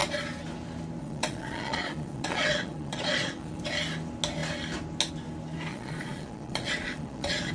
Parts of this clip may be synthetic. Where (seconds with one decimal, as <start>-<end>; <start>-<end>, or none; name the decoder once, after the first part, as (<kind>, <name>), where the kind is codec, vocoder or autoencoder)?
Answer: 1.0-3.6 (vocoder, Vocos); 5.7-7.5